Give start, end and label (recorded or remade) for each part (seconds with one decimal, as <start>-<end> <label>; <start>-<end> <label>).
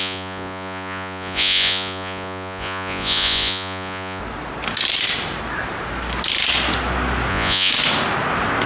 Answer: 0.0-4.2 remade; 4.2-7.3 recorded; 7.3-7.7 remade; 7.7-8.7 recorded